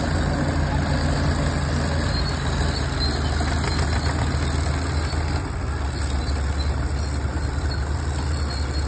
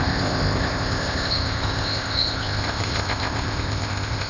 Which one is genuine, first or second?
first